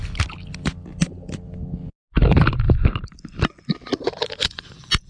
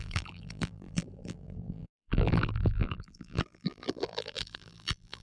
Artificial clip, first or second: second